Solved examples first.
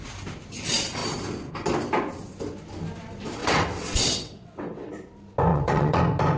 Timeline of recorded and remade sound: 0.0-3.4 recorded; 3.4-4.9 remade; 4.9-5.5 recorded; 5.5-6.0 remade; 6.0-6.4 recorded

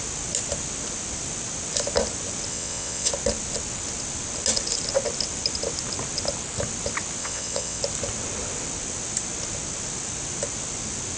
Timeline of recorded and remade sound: 0.0-2.5 recorded; 2.5-3.1 remade; 3.1-7.2 recorded; 7.2-7.8 remade; 7.8-11.2 recorded

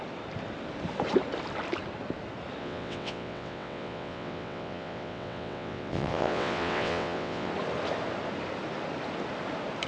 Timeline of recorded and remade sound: 0.0-2.6 recorded; 2.6-7.5 remade; 7.5-9.9 recorded

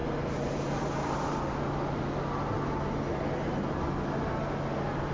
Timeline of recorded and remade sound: 0.0-5.1 recorded

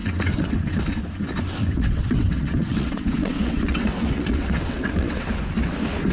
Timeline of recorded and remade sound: 0.0-0.8 remade; 0.8-1.6 recorded; 1.6-5.3 remade; 5.3-6.1 recorded

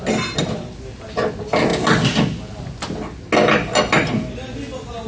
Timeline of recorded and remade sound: 0.0-5.1 recorded

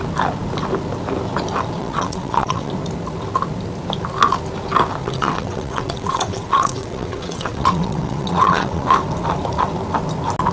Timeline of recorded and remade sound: 0.0-1.8 recorded; 1.8-2.7 remade; 2.7-5.0 recorded; 5.0-8.9 remade; 8.9-10.5 recorded

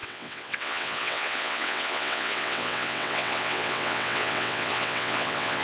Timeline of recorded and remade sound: 0.0-5.6 remade